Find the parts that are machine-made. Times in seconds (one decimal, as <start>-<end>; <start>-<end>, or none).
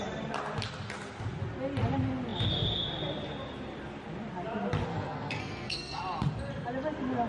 4.9-6.0